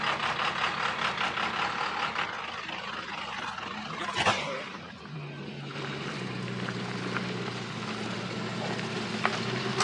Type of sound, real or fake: real